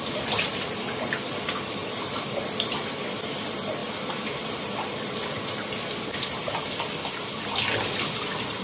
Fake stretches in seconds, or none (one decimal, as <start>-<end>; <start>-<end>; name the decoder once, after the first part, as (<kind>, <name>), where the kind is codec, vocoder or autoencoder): none